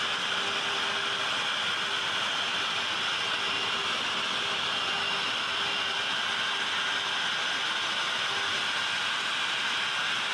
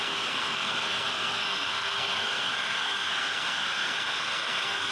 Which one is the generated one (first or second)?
second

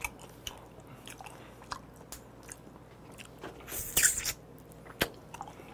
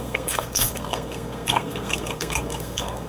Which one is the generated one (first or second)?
second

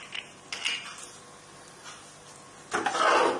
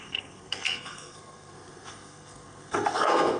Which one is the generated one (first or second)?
second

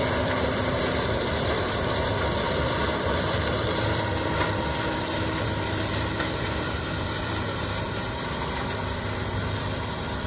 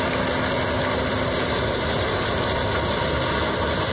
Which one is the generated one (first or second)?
first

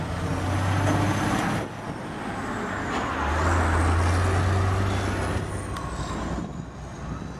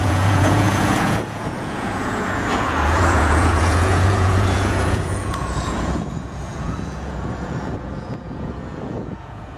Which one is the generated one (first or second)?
second